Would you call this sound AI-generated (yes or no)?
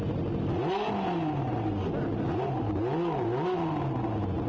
no